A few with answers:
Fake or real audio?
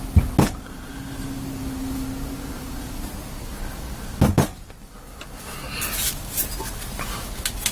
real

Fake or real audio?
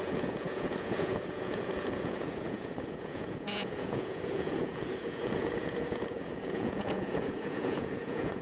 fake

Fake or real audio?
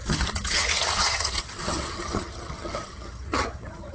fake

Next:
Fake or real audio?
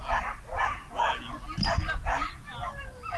real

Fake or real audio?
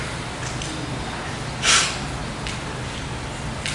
real